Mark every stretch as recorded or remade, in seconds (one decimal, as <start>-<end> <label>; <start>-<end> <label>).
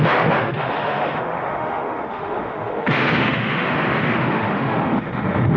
0.0-5.6 remade